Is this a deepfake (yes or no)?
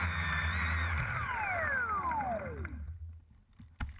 no